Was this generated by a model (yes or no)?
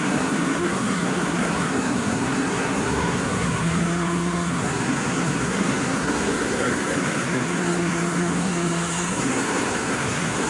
yes